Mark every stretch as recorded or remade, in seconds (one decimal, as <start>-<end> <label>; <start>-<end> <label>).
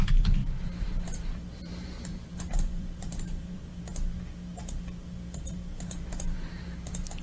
0.0-0.4 recorded; 0.4-3.8 remade; 3.8-5.7 recorded; 5.7-6.5 remade; 6.5-7.2 recorded